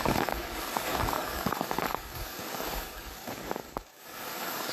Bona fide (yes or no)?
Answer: no